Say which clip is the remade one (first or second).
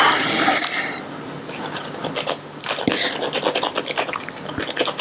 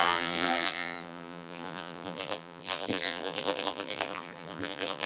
second